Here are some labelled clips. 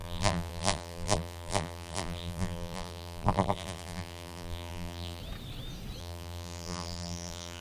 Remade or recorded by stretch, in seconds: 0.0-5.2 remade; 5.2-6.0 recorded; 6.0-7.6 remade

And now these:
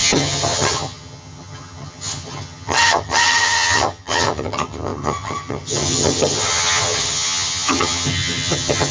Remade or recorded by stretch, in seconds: 0.0-8.9 remade

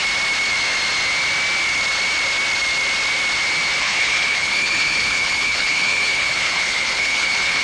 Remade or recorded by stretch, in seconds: 0.0-3.8 recorded; 3.8-7.6 remade

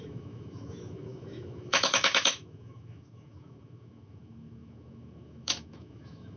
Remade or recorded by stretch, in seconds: 0.0-6.4 remade

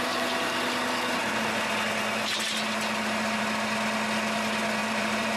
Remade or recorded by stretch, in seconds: 0.0-1.2 recorded; 1.2-1.7 remade; 1.7-4.8 recorded; 4.8-5.4 remade

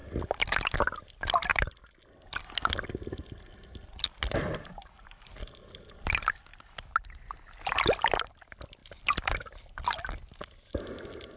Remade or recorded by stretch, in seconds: 0.0-6.5 recorded; 6.5-8.0 remade; 8.0-8.8 recorded; 8.8-10.0 remade; 10.0-11.4 recorded

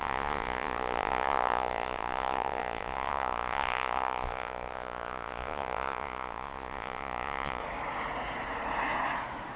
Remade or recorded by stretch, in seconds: 0.0-7.6 remade; 7.6-9.6 recorded